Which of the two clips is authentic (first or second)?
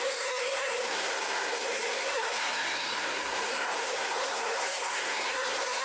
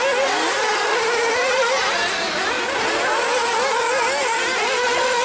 second